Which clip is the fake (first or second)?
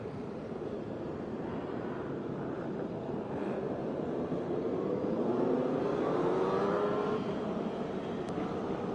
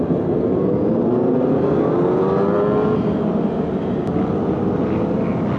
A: first